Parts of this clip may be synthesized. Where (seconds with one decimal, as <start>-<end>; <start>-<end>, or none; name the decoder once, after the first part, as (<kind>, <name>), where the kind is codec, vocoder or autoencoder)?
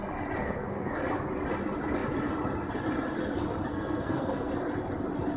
0.4-0.9 (codec, SNAC); 3.7-4.5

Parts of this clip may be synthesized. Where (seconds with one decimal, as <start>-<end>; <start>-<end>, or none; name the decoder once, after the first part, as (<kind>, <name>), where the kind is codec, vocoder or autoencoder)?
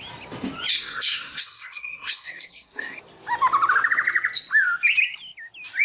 0.7-3.0 (codec, SNAC)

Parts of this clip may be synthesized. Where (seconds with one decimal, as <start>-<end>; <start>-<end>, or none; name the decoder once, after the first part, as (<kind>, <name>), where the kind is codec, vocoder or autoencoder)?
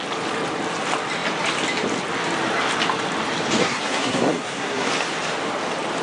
3.6-4.9 (codec, SNAC)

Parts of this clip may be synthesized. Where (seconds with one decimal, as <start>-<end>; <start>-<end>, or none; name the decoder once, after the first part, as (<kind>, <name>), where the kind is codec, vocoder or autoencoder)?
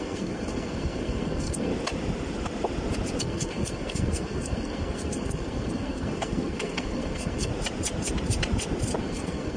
0.0-1.7 (codec, SNAC); 3.2-7.5; 9.0-9.6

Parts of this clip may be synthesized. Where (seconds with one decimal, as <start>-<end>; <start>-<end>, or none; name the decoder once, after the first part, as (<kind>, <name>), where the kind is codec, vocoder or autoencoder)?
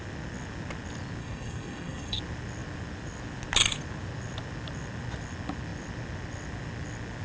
1.2-2.2 (codec, SNAC)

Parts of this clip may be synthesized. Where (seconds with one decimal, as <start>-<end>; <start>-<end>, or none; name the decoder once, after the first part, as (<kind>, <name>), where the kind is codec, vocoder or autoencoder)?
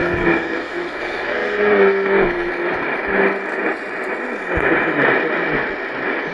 0.0-2.5 (codec, SNAC)